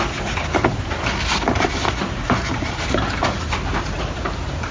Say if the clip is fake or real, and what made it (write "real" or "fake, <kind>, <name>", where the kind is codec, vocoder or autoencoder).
real